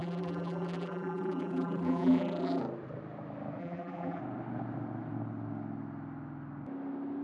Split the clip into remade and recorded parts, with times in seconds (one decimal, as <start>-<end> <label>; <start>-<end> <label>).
0.0-2.6 remade; 2.6-3.6 recorded; 3.6-4.2 remade; 4.2-7.2 recorded